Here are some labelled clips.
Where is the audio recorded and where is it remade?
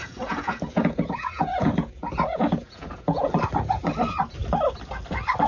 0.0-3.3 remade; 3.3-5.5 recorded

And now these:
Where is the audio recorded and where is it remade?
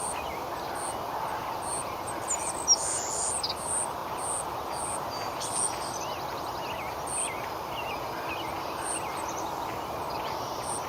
0.0-10.9 recorded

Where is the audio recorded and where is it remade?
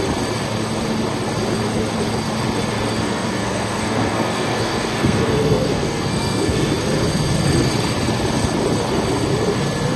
0.0-2.9 recorded; 2.9-6.7 remade; 6.7-10.0 recorded